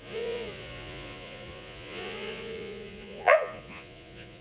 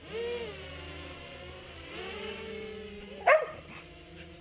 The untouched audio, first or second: second